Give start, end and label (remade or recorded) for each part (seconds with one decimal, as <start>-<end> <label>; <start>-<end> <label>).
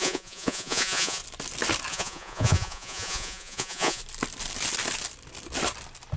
0.0-1.2 remade; 1.2-1.9 recorded; 1.9-4.0 remade; 4.0-6.2 recorded